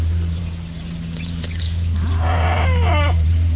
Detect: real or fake fake